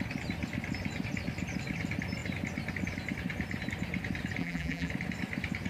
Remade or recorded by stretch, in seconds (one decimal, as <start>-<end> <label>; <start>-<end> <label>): 0.0-4.4 recorded; 4.4-4.9 remade; 4.9-5.7 recorded

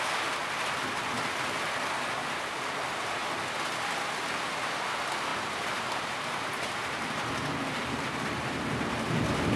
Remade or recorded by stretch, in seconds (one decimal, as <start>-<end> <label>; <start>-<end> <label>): 0.0-5.3 recorded; 5.3-8.7 remade; 8.7-9.6 recorded

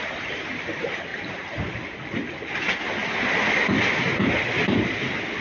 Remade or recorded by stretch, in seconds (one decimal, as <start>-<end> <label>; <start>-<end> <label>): 0.0-5.4 recorded

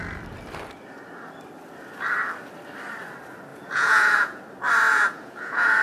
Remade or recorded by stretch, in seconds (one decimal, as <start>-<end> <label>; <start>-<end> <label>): 0.0-3.5 recorded; 3.5-4.4 remade; 4.4-4.9 recorded; 4.9-5.8 remade

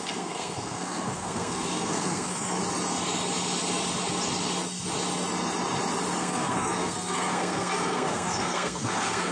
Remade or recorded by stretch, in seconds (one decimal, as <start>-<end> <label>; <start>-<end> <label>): 0.0-2.6 remade; 2.6-6.2 recorded; 6.2-9.3 remade

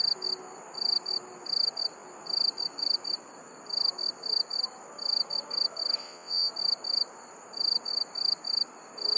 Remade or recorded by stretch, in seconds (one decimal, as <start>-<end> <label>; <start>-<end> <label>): 0.0-6.0 recorded; 6.0-6.5 remade; 6.5-9.2 recorded

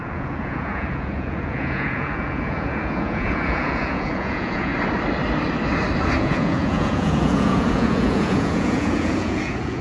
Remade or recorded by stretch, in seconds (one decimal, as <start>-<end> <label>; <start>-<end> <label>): 0.0-4.7 remade; 4.7-6.2 recorded; 6.2-9.8 remade

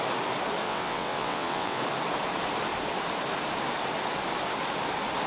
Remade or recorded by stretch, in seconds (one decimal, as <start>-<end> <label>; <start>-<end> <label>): 0.0-0.6 recorded; 0.6-1.8 remade; 1.8-5.3 recorded